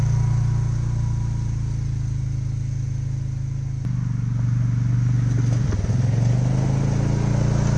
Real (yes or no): yes